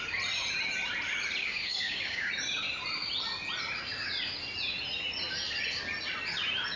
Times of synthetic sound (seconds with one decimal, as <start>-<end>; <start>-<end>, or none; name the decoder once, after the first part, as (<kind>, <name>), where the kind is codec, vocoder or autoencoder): 1.4-2.3 (codec, DAC)